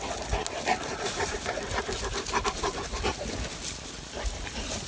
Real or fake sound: real